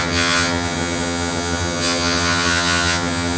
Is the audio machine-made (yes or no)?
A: yes